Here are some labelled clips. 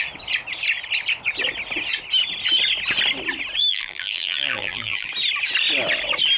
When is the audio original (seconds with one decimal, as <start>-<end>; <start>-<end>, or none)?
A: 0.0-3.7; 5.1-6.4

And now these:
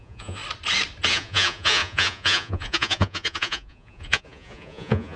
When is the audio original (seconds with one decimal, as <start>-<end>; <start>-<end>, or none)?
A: 0.4-1.1

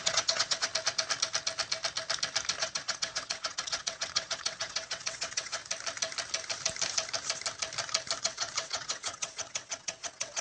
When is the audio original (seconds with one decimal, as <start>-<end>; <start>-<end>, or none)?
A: 0.7-2.6; 5.6-8.2

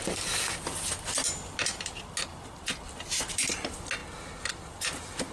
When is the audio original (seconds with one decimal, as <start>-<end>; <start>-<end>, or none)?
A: 0.0-4.0; 4.5-5.3

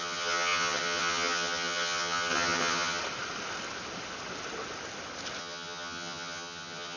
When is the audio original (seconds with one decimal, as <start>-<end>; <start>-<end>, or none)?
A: 3.0-5.4